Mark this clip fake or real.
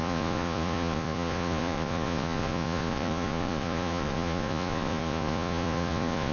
fake